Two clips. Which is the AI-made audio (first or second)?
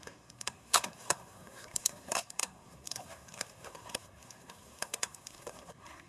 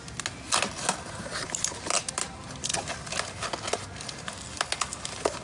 first